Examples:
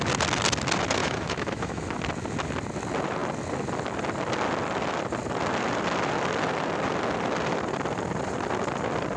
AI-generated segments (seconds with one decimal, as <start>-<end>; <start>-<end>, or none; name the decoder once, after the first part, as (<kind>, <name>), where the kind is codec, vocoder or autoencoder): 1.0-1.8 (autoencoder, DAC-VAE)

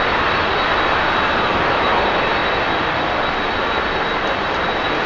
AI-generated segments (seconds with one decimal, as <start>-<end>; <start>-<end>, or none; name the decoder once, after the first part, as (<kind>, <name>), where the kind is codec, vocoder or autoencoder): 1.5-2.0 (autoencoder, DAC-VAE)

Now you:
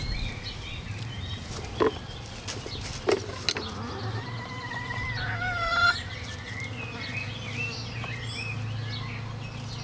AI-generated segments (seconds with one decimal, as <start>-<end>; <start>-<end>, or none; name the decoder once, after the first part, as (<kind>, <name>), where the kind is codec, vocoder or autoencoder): none

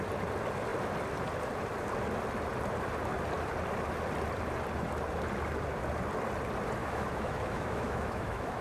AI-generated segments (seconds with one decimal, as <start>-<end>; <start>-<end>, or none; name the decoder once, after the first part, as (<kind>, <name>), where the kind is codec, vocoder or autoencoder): 6.8-8.6 (autoencoder, DAC-VAE)